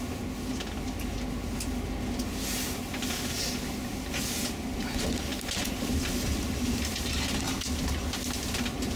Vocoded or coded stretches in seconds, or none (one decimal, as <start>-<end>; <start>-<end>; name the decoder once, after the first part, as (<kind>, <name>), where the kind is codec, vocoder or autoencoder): none